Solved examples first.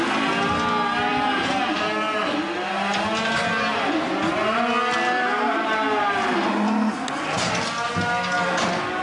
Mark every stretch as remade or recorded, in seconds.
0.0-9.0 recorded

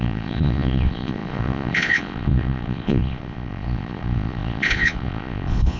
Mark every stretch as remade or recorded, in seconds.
0.0-5.8 remade

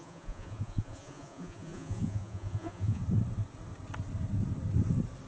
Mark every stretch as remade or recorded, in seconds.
0.0-3.0 remade; 3.0-5.3 recorded

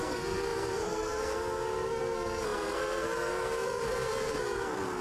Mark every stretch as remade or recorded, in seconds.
0.0-5.0 remade

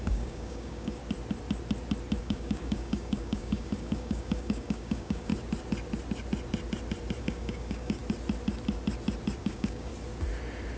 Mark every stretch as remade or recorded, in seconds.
0.0-1.0 remade; 1.0-2.2 recorded; 2.2-5.3 remade; 5.3-7.2 recorded; 7.2-8.0 remade; 8.0-9.4 recorded; 9.4-9.9 remade; 9.9-10.8 recorded

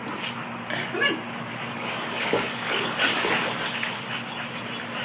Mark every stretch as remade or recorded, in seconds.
0.0-1.5 recorded; 1.5-3.9 remade; 3.9-5.0 recorded